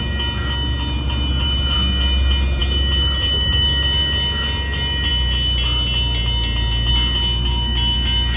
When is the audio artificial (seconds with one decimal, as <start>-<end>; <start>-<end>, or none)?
none